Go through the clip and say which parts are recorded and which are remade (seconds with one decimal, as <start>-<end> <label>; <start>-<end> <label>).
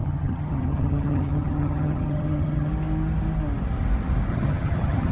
0.0-2.7 remade; 2.7-4.3 recorded; 4.3-5.1 remade